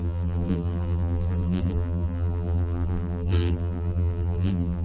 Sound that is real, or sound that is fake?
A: fake